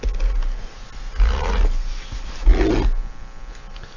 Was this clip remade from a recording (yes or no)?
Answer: no